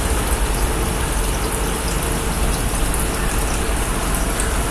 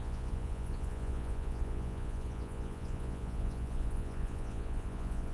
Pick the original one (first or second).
first